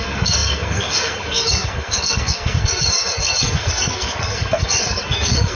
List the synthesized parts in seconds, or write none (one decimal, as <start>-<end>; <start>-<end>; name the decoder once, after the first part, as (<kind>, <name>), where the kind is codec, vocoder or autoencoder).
0.0-5.5 (codec, SNAC)